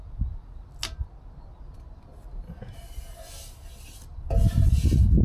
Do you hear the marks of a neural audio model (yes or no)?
no